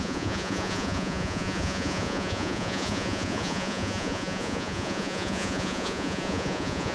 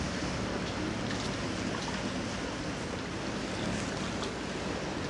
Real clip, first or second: second